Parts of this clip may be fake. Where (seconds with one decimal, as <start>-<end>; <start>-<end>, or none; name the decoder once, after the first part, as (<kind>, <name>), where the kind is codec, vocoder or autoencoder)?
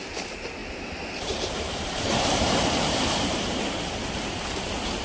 0.6-3.6 (vocoder, BigVGAN v2)